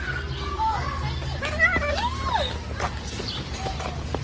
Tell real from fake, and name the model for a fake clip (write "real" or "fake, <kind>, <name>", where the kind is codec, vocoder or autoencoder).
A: real